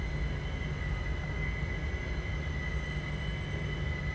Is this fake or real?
real